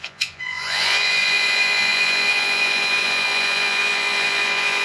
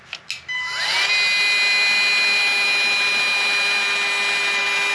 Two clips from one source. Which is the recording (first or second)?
second